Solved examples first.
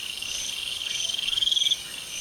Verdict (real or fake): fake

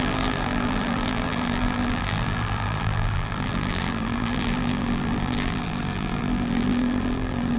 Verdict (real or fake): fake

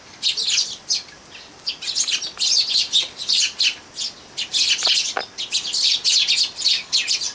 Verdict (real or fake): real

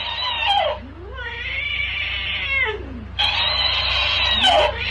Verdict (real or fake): real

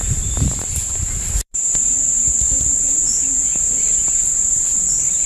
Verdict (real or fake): fake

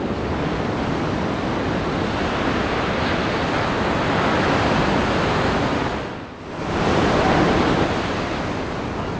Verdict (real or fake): real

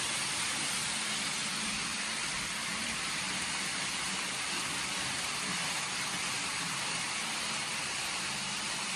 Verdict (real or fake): fake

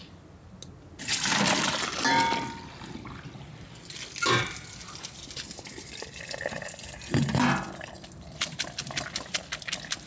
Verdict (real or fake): real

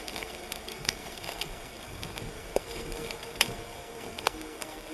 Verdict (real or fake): fake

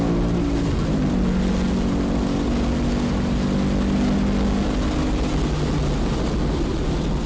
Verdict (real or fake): real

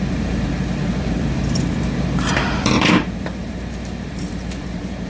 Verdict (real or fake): fake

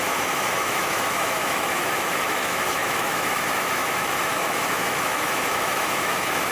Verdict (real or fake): fake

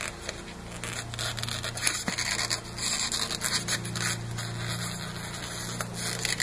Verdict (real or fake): real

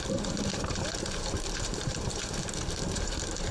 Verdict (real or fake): fake